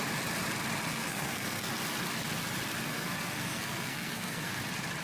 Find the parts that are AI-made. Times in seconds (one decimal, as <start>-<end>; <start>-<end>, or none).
0.9-1.7; 2.9-4.6